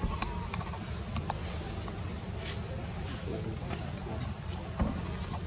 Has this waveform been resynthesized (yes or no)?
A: no